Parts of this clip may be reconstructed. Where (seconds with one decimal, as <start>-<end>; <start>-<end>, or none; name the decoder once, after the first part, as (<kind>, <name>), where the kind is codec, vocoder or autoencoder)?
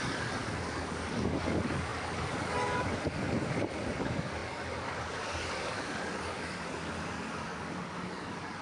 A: 0.0-8.6 (codec, DAC)